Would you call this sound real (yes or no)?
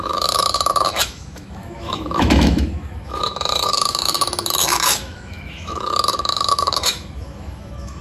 no